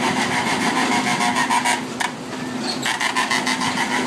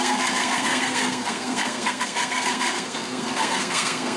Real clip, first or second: first